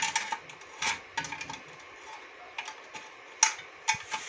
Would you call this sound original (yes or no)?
yes